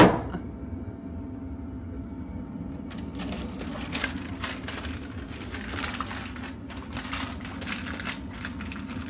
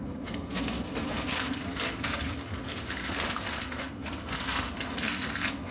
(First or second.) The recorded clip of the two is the first